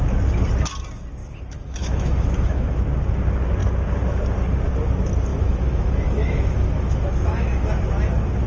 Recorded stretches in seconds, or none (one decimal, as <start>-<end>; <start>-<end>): 0.0-1.2; 2.8-5.3; 7.7-8.5